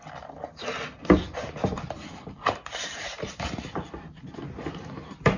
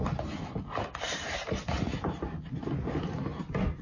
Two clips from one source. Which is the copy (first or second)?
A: first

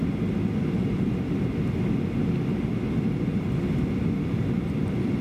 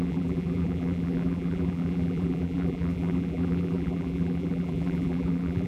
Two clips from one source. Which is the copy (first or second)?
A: second